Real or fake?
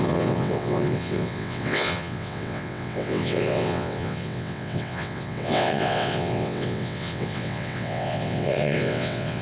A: fake